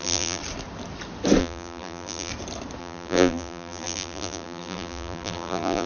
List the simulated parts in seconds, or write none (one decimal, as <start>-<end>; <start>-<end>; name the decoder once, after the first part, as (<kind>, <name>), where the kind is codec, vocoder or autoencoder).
0.0-0.4 (vocoder, BigVGAN v2); 1.4-2.3; 2.8-5.9